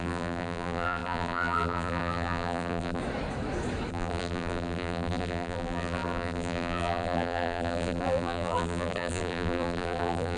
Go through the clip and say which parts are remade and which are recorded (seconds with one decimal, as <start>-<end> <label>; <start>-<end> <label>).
0.0-3.0 remade; 3.0-3.9 recorded; 3.9-10.4 remade